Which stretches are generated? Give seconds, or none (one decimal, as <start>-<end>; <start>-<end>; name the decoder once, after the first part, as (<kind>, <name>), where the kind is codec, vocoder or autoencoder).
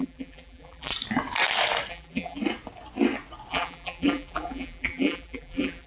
0.0-0.9 (vocoder, BigVGAN v2); 1.9-2.4; 3.5-5.9